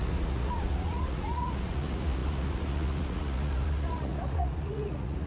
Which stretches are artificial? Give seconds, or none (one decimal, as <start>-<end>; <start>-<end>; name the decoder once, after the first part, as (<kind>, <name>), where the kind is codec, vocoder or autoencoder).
0.0-5.3 (vocoder, Vocos)